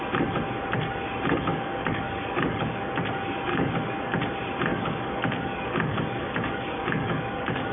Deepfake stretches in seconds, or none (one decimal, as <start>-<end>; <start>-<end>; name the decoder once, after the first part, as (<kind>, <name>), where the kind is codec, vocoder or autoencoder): 1.5-2.9 (codec, DAC); 3.5-4.3; 4.7-7.7